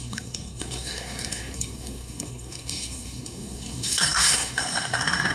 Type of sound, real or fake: fake